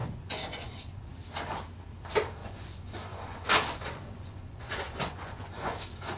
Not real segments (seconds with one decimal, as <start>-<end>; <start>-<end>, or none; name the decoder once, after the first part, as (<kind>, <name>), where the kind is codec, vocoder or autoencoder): 0.0-1.1 (vocoder, Vocos); 2.4-6.2